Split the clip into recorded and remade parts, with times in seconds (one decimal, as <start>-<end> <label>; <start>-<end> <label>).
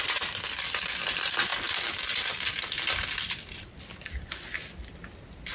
0.0-5.5 recorded